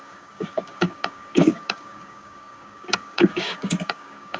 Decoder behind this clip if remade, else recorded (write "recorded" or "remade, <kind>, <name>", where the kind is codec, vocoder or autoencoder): remade, codec, DAC